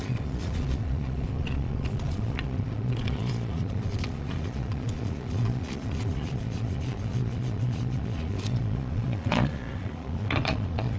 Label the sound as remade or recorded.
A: remade